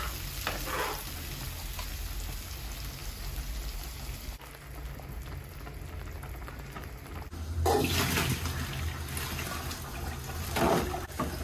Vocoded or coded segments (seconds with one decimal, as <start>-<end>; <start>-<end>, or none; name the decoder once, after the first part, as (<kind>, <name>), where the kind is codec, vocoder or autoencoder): none